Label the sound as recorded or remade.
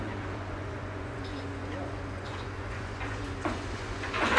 remade